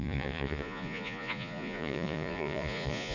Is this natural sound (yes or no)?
no